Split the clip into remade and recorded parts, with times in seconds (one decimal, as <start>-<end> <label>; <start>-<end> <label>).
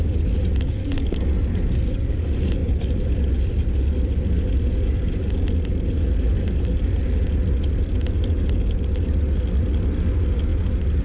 0.0-2.6 recorded; 2.6-7.0 remade; 7.0-11.0 recorded